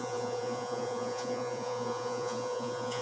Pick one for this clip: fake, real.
fake